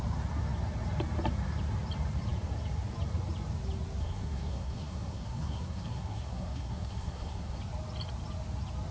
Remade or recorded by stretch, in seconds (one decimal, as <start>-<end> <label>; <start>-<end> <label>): 0.0-4.0 recorded; 4.0-7.6 remade; 7.6-8.9 recorded